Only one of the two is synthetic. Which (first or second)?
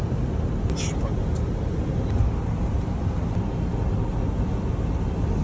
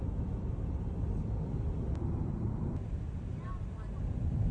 second